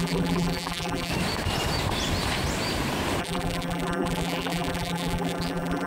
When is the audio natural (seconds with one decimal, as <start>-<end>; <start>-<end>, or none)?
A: 1.1-3.2

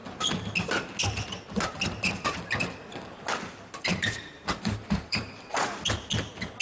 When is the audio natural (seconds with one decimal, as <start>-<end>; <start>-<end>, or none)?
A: 0.0-3.9; 5.8-6.6